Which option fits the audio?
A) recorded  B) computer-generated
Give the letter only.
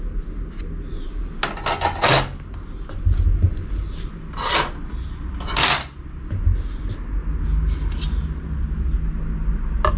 A